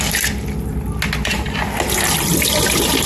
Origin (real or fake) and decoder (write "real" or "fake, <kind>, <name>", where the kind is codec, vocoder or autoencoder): real